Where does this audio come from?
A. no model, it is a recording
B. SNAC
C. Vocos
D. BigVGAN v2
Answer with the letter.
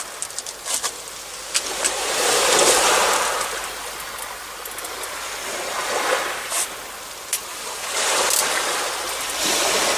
A